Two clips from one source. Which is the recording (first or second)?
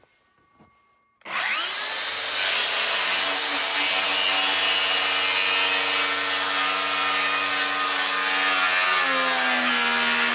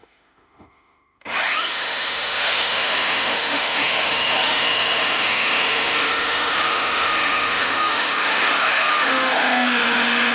first